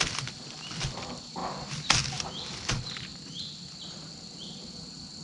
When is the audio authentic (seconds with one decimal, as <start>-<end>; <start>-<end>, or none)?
0.0-1.4; 2.3-5.2